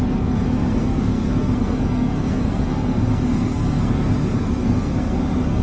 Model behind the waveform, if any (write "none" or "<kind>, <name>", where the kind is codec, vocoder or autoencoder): codec, SNAC